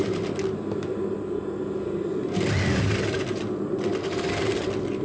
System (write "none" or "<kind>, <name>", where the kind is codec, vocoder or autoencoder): none